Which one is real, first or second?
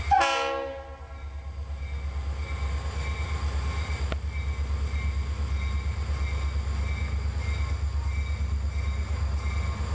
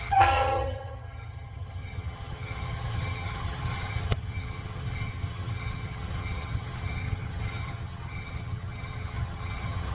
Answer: first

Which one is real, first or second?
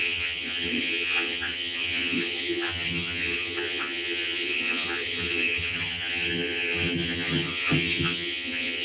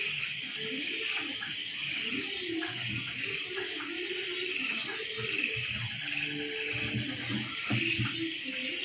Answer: second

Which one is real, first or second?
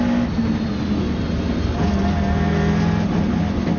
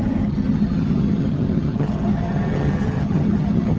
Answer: first